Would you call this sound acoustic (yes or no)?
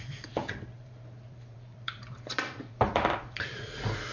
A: no